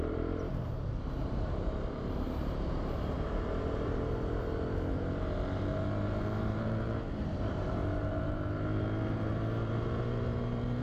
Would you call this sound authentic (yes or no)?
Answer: no